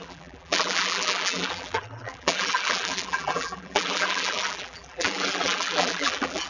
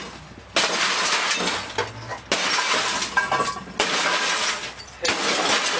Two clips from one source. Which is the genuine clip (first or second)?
second